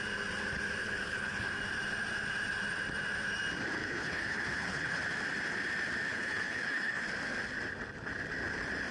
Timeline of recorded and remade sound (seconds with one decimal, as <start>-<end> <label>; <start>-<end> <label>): 0.0-0.8 recorded; 0.8-1.5 remade; 1.5-3.8 recorded; 3.8-5.0 remade; 5.0-6.1 recorded; 6.1-7.0 remade; 7.0-8.9 recorded